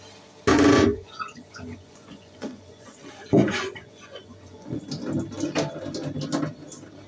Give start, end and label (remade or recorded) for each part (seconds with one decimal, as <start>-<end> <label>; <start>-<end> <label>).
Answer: 0.0-0.5 recorded; 0.5-4.8 remade; 4.8-7.1 recorded